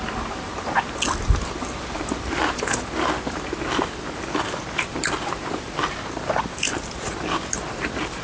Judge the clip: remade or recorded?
recorded